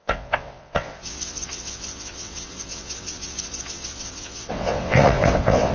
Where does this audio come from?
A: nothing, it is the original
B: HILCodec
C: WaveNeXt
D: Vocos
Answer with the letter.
C